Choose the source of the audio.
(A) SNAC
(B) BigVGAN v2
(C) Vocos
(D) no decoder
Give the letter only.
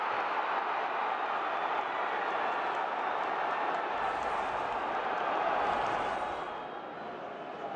D